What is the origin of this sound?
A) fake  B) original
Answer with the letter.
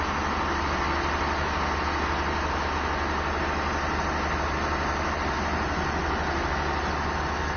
B